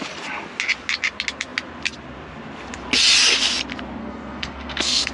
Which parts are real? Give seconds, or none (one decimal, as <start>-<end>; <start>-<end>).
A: 0.0-4.0